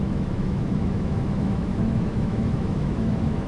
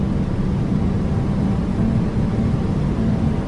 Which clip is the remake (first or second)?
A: first